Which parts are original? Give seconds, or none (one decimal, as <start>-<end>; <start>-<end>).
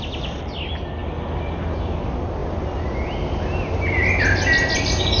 0.0-5.2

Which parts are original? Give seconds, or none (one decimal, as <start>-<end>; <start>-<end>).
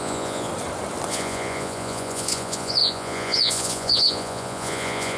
0.5-1.1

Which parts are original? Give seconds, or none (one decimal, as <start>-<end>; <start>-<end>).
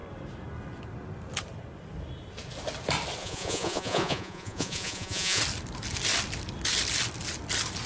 0.0-3.2; 5.4-7.9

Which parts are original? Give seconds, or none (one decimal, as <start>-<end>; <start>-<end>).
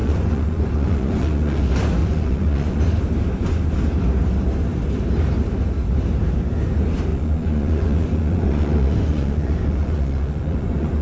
1.6-2.0; 2.8-7.1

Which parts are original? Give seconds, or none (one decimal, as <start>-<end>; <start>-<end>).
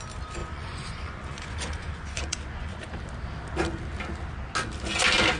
0.0-0.4; 2.8-5.4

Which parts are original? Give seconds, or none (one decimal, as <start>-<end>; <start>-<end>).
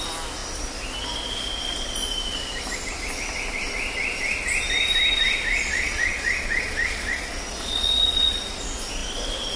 0.0-5.6; 8.4-9.6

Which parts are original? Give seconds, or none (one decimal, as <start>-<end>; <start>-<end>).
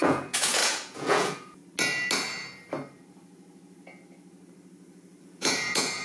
1.6-5.2